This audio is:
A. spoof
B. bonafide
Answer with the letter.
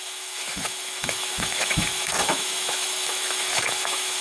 A